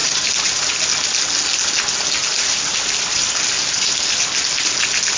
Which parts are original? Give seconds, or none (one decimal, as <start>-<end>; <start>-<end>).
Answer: 0.6-2.2

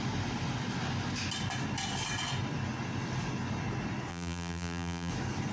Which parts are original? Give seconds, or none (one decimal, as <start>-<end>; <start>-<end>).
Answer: 0.0-4.1; 5.1-5.5